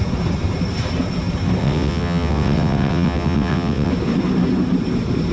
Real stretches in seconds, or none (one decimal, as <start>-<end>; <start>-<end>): 0.0-1.6; 3.9-5.3